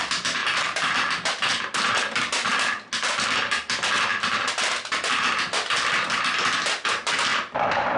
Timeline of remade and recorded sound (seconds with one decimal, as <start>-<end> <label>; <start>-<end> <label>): 0.0-4.1 recorded; 4.1-6.4 remade; 6.4-7.3 recorded; 7.3-8.0 remade